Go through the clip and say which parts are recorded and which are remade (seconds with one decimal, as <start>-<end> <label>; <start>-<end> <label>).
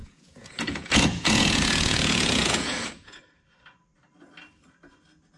0.0-3.2 remade; 3.2-5.4 recorded